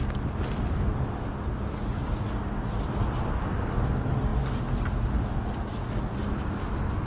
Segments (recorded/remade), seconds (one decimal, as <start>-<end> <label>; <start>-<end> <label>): 0.0-3.8 remade; 3.8-7.1 recorded

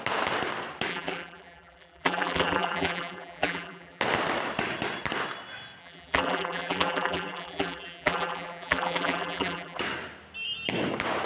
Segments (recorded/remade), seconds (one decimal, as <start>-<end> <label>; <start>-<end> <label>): 0.0-0.9 recorded; 0.9-4.0 remade; 4.0-5.8 recorded; 5.8-9.8 remade; 9.8-11.3 recorded

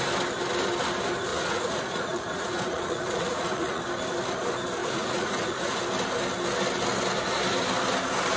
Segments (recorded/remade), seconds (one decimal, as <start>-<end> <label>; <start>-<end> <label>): 0.0-1.3 recorded; 1.3-3.8 remade; 3.8-4.8 recorded; 4.8-5.8 remade; 5.8-8.4 recorded